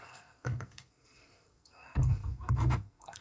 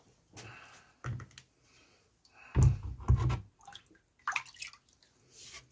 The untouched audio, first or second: second